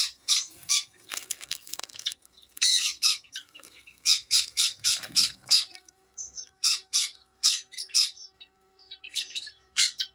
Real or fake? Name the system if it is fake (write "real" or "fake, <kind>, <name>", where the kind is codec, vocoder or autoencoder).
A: fake, codec, SNAC